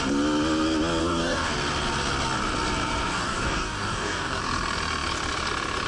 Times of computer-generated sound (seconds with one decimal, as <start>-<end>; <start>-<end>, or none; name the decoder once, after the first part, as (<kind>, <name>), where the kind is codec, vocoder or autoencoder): 1.0-1.5 (codec, DAC); 3.1-4.4